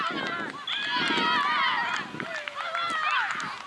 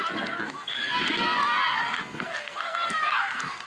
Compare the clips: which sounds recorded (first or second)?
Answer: first